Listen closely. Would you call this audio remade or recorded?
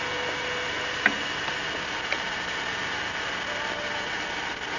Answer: recorded